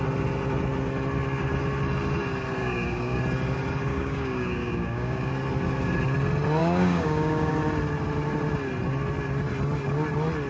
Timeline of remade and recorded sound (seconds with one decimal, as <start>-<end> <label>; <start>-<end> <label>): 0.0-2.6 recorded; 2.6-3.2 remade; 3.2-3.9 recorded; 3.9-5.3 remade; 5.3-6.6 recorded; 6.6-7.5 remade; 7.5-10.5 recorded